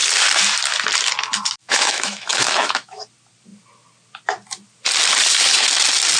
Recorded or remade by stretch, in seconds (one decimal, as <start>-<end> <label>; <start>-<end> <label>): 0.0-1.6 recorded; 1.6-3.0 remade; 3.0-6.2 recorded